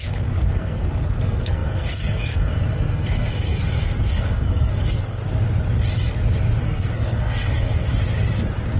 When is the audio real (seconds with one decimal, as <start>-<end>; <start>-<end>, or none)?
5.2-6.6; 7.8-8.8